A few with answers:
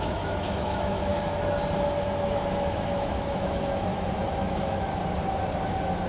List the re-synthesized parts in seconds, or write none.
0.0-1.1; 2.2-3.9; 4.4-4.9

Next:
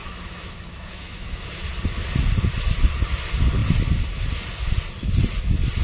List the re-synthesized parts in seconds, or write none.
0.0-1.5